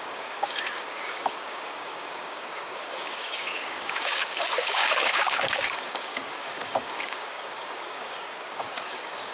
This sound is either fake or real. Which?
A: fake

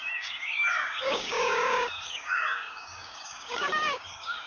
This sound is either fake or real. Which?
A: fake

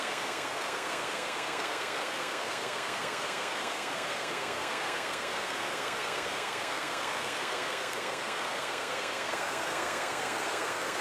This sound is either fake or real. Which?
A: fake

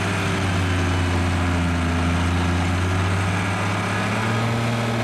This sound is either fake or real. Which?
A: real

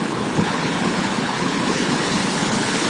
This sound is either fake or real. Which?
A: fake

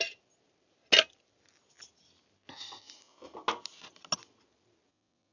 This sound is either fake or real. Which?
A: real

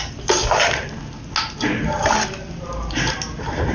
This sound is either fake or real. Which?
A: real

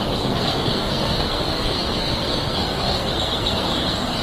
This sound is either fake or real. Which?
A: fake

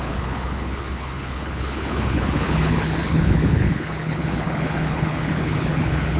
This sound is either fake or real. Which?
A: fake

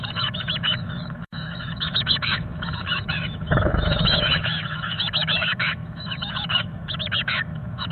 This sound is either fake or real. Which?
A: fake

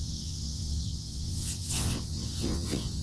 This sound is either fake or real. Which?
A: fake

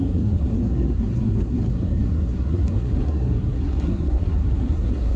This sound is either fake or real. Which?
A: fake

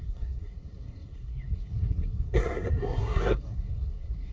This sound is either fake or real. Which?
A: fake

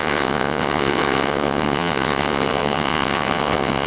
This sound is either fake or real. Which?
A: fake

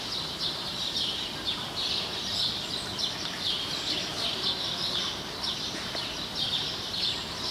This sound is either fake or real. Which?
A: real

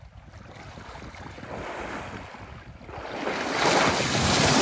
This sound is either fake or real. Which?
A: real